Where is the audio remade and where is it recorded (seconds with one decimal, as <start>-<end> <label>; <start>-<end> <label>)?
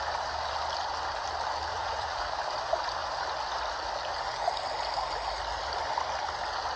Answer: 0.0-1.7 recorded; 1.7-2.3 remade; 2.3-6.8 recorded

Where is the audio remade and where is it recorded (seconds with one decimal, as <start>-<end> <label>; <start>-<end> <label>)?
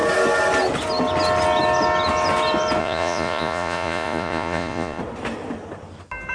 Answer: 0.0-2.8 recorded; 2.8-5.0 remade; 5.0-6.3 recorded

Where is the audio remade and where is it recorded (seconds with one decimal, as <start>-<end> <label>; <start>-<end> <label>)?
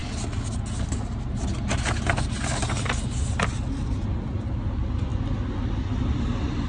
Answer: 0.0-6.7 recorded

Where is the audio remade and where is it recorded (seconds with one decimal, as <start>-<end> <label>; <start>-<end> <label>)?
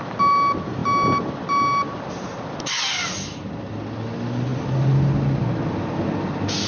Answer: 0.0-6.7 recorded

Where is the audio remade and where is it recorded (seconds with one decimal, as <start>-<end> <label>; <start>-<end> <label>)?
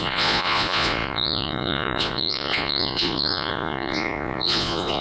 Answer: 0.0-5.0 remade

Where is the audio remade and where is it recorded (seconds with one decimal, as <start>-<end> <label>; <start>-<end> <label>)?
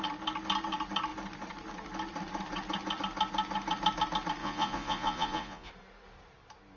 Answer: 0.0-4.4 recorded; 4.4-5.7 remade; 5.7-6.8 recorded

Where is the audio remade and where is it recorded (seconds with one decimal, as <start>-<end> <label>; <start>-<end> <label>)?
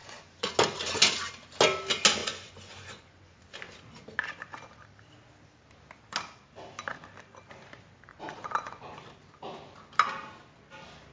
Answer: 0.0-0.5 remade; 0.5-2.2 recorded; 2.2-3.4 remade; 3.4-8.1 recorded; 8.1-9.0 remade; 9.0-11.1 recorded